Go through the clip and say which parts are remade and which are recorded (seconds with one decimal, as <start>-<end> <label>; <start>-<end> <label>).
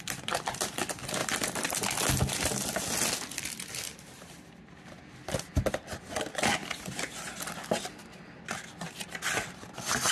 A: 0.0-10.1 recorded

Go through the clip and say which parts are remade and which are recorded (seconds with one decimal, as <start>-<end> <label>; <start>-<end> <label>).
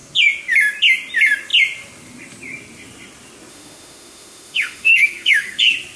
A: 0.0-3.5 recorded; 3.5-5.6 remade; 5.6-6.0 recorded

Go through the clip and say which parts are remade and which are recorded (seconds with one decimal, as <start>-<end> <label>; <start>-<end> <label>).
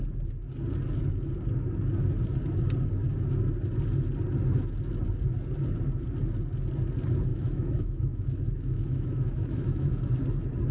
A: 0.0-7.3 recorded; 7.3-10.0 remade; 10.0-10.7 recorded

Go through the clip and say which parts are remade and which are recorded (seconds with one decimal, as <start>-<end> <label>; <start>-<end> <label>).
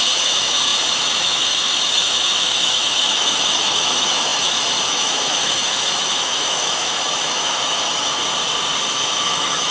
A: 0.0-8.2 remade; 8.2-8.9 recorded; 8.9-9.7 remade